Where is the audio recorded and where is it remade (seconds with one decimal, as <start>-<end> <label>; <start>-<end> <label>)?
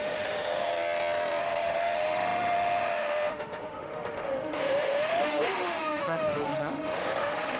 0.0-0.7 remade; 0.7-1.4 recorded; 1.4-7.6 remade